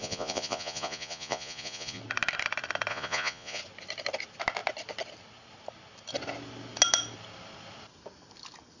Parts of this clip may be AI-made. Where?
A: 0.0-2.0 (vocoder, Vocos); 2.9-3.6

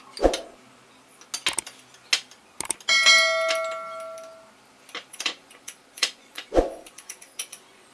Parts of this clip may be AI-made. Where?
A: 5.1-7.9 (vocoder, Vocos)

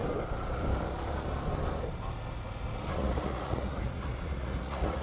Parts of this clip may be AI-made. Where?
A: 3.0-5.0 (vocoder, Vocos)

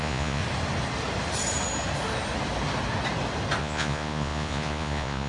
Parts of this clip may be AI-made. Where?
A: 0.0-0.4 (vocoder, Vocos); 3.6-5.3

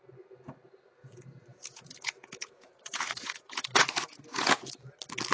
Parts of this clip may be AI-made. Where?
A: 1.5-4.7 (vocoder, Vocos)